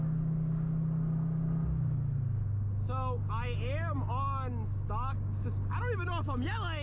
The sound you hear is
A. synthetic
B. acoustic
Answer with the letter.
B